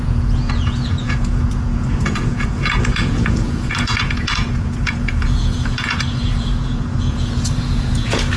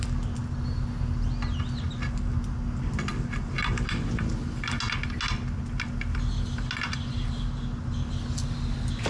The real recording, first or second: second